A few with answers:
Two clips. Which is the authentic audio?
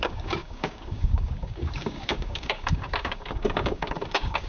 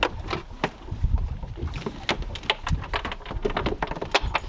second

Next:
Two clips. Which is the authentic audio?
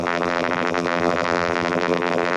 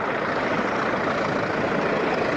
second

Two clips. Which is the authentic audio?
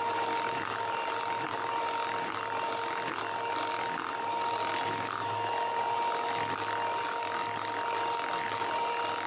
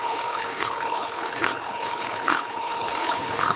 first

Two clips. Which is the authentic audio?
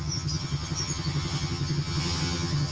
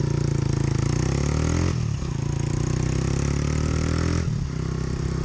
second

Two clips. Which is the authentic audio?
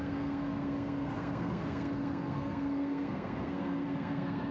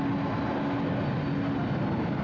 second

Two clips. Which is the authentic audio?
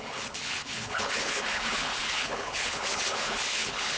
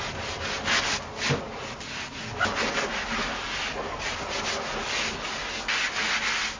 second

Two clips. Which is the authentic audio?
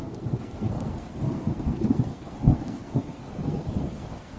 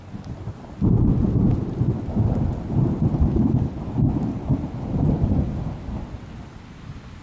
second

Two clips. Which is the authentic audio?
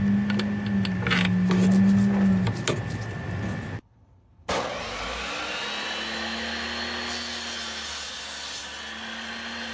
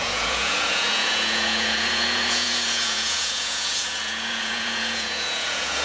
first